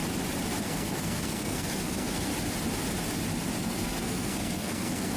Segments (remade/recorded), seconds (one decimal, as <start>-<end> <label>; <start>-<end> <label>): 0.0-0.6 recorded; 0.6-2.3 remade; 2.3-3.6 recorded; 3.6-5.2 remade